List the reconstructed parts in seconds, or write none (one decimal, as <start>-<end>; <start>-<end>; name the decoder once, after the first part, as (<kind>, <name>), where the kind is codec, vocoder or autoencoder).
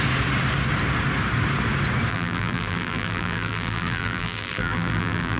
2.1-5.4 (vocoder, BigVGAN v2)